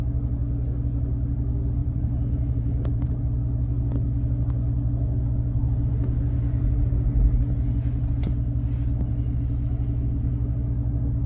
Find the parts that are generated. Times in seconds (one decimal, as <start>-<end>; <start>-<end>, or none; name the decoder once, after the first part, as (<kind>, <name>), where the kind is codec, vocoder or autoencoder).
1.8-3.2 (vocoder, BigVGAN v2)